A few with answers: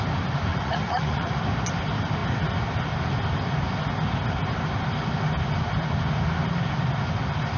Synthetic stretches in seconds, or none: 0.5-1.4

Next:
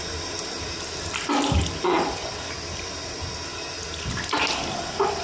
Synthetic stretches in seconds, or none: none

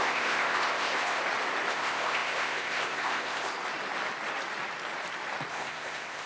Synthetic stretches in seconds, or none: 0.0-1.2; 1.7-3.5; 5.5-6.3

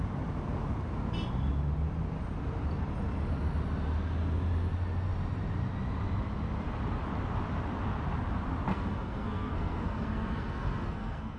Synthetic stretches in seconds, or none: 8.7-11.4

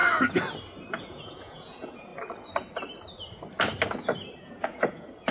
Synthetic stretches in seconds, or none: 1.0-2.1; 4.4-5.3

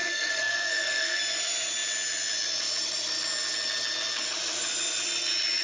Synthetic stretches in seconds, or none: 0.0-1.2

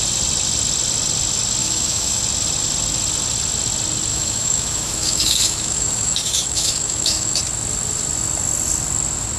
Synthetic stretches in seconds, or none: 1.6-2.2; 4.1-7.4